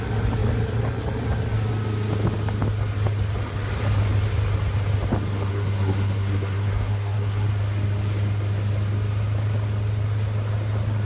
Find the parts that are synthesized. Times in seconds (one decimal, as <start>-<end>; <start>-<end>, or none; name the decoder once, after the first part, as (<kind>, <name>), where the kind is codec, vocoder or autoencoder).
5.5-7.5 (codec, SNAC)